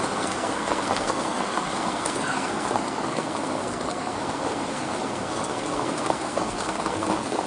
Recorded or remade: remade